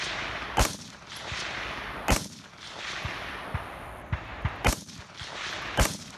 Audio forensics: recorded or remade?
recorded